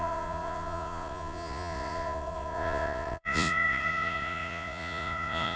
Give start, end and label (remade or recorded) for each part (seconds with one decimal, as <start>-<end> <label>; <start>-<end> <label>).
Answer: 0.0-5.6 remade